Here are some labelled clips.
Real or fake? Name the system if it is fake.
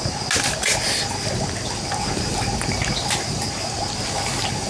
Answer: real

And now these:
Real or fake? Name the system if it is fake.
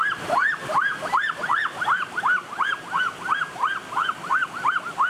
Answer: real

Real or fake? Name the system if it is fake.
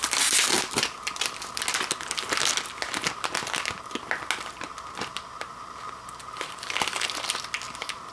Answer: real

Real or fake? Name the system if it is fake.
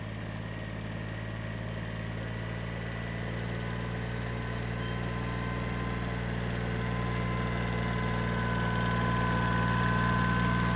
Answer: real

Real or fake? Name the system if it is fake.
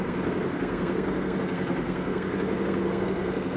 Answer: fake, codec, SNAC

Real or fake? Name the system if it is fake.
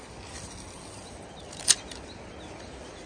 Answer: real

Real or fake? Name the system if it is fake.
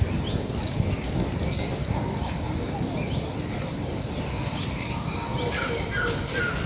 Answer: real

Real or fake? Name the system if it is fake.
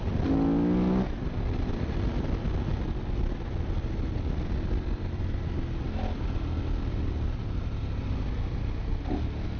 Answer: real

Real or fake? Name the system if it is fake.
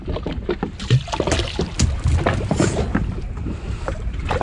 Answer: real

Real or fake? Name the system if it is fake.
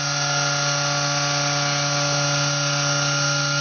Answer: real